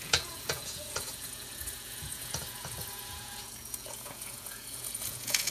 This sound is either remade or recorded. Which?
remade